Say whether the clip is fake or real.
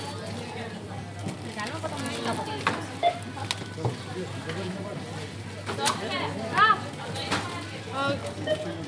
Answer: real